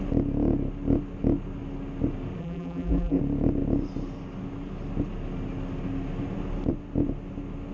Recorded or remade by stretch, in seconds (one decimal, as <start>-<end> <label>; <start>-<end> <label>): 0.0-2.4 recorded; 2.4-3.2 remade; 3.2-7.7 recorded